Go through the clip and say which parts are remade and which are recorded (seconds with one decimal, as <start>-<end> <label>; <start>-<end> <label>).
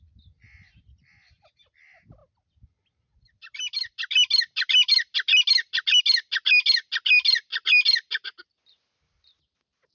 0.0-9.9 recorded